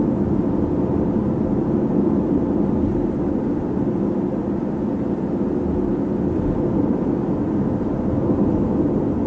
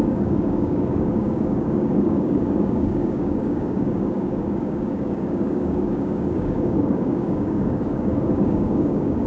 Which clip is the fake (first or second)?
second